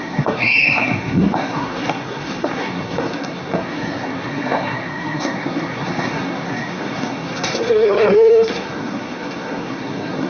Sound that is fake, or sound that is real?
fake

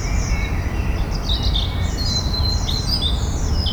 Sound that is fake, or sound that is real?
real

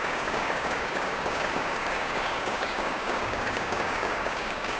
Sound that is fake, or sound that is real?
fake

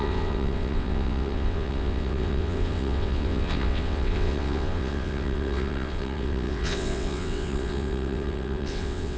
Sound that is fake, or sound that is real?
fake